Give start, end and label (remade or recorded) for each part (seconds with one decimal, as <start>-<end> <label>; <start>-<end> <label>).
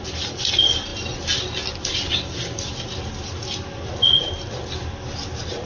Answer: 0.0-5.7 recorded